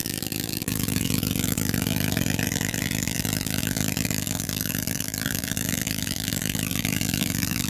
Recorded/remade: remade